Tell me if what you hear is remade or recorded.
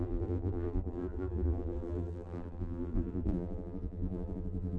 remade